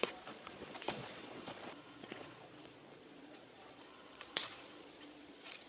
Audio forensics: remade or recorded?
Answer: remade